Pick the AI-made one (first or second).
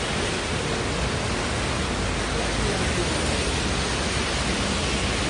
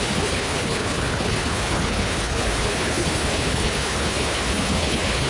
second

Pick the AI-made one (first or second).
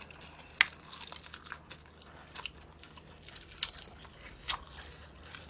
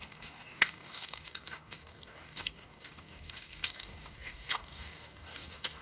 second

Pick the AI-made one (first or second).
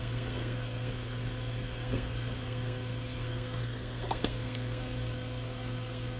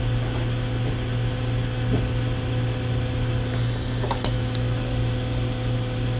first